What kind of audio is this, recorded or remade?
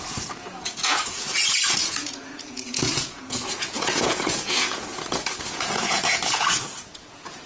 remade